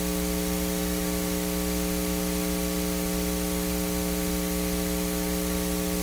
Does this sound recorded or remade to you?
recorded